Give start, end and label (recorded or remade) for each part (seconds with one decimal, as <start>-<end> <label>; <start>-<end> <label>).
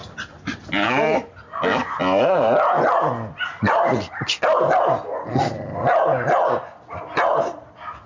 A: 0.0-8.1 recorded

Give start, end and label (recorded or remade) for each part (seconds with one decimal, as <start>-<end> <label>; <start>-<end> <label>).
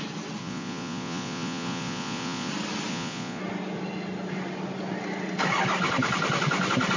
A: 0.0-0.4 recorded; 0.4-2.5 remade; 2.5-2.9 recorded; 2.9-3.4 remade; 3.4-7.0 recorded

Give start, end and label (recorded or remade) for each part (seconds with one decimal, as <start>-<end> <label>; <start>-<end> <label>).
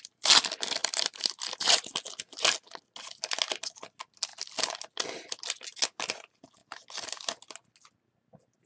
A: 0.0-0.8 recorded; 0.8-1.5 remade; 1.5-4.3 recorded; 4.3-4.8 remade; 4.8-8.7 recorded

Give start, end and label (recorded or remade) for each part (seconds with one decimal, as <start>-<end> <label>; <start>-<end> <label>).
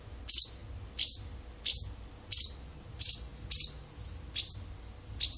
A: 0.0-5.4 recorded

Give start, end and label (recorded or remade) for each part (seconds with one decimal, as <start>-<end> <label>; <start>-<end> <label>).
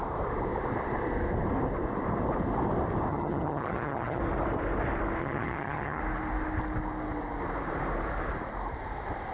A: 0.0-3.1 recorded; 3.1-4.2 remade; 4.2-5.2 recorded; 5.2-6.0 remade; 6.0-9.3 recorded